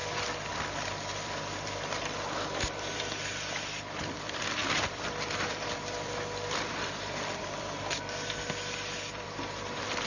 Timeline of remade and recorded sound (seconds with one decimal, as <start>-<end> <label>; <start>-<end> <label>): 0.0-0.5 recorded; 0.5-10.1 remade